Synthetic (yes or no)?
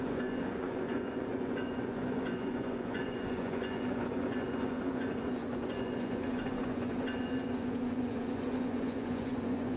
yes